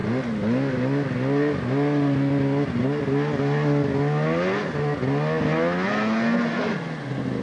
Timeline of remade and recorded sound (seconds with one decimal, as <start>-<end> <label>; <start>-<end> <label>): 0.0-7.4 recorded